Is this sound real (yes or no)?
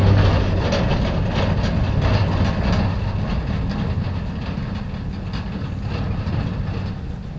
yes